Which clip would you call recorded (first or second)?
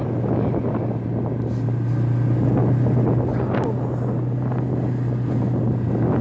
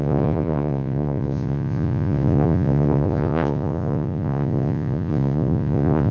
first